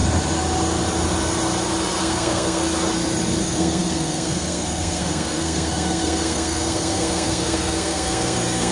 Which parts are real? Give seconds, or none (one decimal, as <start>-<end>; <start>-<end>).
0.0-2.0; 2.6-3.4